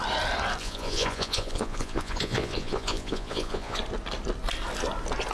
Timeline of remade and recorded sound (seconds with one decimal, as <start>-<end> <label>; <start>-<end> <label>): 0.0-0.6 recorded; 0.6-3.8 remade; 3.8-5.3 recorded